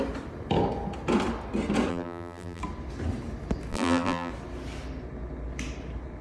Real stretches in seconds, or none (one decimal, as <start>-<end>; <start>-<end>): 0.0-1.9; 2.6-3.7; 4.3-6.2